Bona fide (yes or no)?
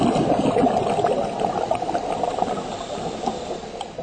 yes